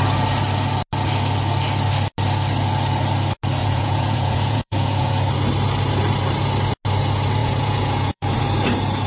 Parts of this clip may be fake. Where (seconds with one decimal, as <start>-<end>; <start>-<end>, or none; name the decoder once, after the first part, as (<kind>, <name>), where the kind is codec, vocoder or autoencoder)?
3.6-5.1 (vocoder, Vocos); 7.4-8.4